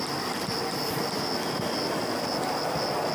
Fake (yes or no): no